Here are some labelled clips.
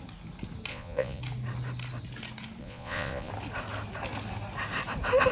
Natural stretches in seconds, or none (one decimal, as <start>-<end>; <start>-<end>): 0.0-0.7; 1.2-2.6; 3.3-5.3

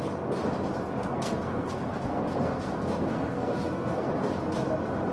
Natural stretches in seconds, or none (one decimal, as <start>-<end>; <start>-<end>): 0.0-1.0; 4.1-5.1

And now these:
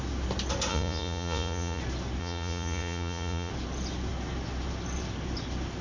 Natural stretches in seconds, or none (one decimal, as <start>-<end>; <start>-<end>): 0.0-0.7; 1.8-2.2; 3.5-5.8

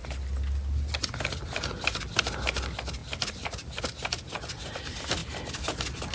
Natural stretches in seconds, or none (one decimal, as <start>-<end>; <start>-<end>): 0.0-6.1

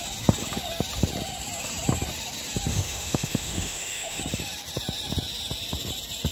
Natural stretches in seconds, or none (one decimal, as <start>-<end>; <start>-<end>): 0.0-2.7; 4.2-6.3